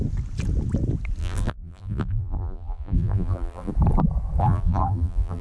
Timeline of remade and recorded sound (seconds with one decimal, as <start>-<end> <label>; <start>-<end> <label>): 0.0-1.2 recorded; 1.2-3.7 remade; 3.7-4.4 recorded; 4.4-5.4 remade